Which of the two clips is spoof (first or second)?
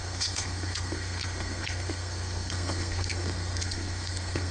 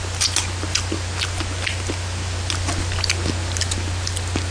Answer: first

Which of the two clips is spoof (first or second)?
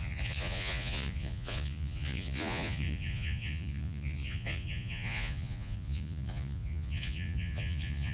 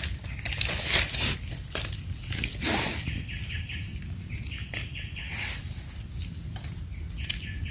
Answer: first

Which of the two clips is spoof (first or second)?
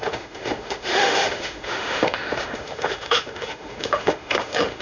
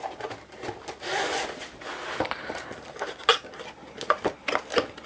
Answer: first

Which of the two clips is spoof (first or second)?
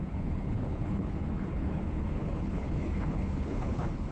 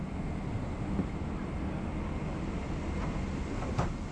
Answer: first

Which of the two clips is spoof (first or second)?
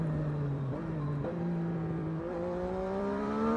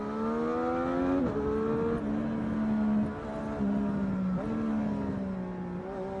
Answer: first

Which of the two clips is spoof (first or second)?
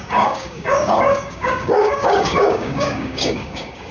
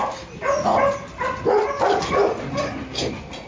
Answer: first